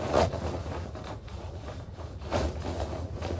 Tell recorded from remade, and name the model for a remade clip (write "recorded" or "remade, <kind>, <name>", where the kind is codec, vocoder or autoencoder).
remade, vocoder, Vocos